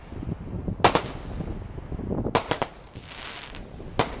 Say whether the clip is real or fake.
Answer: real